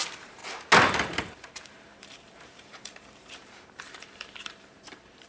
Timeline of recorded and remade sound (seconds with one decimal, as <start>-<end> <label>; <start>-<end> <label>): 0.0-0.4 remade; 0.4-1.2 recorded; 1.2-5.3 remade